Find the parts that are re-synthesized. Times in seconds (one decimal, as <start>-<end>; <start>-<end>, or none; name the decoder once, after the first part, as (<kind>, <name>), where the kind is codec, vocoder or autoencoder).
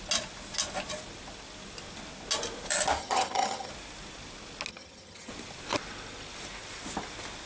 3.0-3.7 (vocoder, HiFi-GAN); 4.7-5.3